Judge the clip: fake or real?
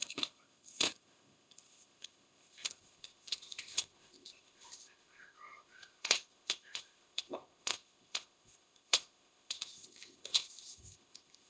fake